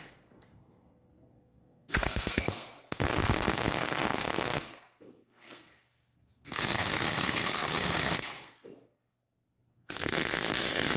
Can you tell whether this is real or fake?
fake